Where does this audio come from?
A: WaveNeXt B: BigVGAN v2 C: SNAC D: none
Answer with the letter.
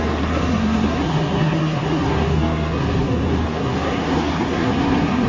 C